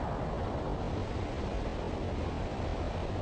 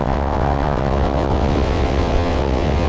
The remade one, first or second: second